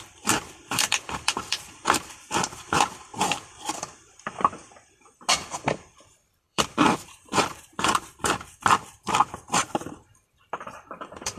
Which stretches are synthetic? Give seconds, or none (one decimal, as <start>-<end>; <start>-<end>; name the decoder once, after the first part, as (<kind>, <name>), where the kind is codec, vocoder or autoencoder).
0.0-3.1 (vocoder, BigVGAN v2); 3.7-4.6; 5.3-11.4